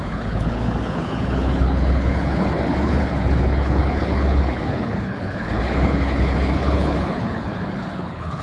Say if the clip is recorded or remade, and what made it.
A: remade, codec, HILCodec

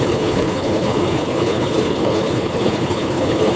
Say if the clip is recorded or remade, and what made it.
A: remade, codec, HILCodec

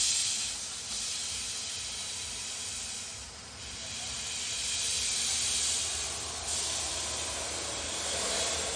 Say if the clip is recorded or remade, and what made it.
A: recorded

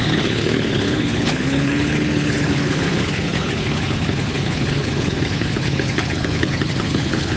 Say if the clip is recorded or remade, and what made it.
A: remade, codec, HILCodec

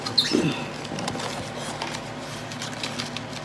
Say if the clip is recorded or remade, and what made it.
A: recorded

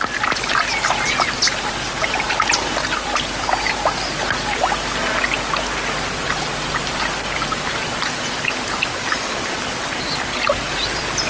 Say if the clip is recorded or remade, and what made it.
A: recorded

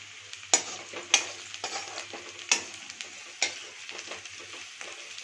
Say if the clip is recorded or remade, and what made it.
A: recorded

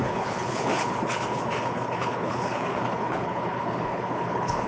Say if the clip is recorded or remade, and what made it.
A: remade, codec, HILCodec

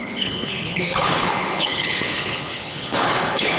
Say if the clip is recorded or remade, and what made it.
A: remade, codec, HILCodec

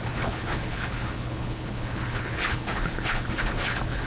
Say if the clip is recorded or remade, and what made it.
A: remade, codec, HILCodec